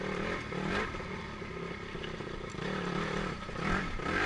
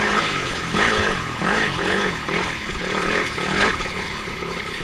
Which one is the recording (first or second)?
first